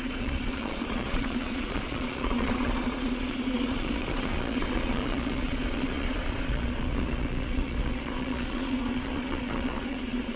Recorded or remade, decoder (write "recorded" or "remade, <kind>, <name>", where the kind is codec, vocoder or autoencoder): remade, vocoder, Vocos